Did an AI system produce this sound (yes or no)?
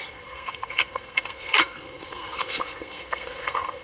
yes